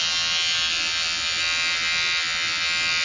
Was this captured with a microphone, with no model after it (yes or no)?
yes